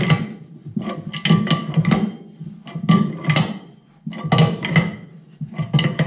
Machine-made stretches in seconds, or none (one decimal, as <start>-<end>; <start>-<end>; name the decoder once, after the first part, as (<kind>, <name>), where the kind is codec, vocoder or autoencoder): none